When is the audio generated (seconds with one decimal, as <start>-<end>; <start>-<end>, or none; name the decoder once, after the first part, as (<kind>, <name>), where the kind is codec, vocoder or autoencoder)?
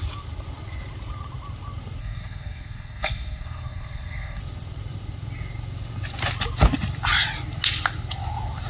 2.0-4.4 (codec, SNAC)